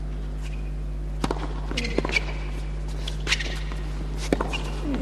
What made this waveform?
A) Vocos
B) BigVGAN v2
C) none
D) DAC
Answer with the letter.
C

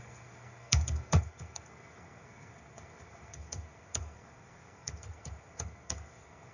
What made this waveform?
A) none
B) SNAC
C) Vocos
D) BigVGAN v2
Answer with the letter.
B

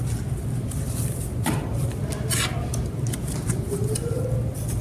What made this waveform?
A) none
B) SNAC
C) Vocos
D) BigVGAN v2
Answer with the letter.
A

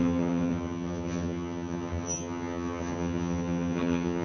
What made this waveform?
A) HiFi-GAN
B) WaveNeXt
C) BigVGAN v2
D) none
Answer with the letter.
A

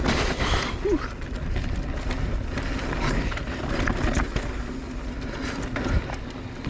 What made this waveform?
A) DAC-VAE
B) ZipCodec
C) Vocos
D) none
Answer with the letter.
D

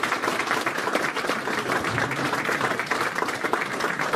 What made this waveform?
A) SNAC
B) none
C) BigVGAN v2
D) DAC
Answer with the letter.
C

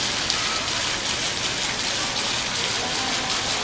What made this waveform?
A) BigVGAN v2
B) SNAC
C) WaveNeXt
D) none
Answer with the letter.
D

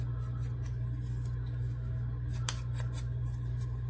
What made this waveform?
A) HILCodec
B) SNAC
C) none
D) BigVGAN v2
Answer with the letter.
C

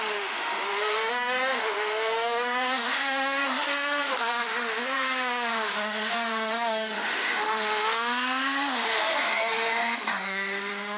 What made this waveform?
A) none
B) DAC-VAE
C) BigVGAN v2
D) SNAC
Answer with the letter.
B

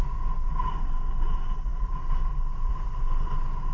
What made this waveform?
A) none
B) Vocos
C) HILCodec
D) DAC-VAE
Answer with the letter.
A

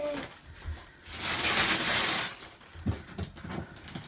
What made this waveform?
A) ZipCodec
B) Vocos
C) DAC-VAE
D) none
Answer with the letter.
D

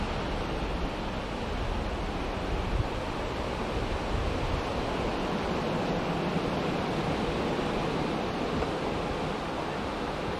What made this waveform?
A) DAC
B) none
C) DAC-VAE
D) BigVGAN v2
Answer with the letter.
B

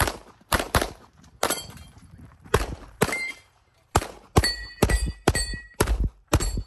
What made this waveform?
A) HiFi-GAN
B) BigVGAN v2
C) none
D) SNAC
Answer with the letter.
B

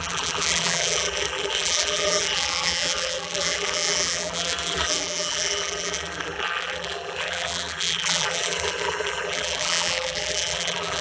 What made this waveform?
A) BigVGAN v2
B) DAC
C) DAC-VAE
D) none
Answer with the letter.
A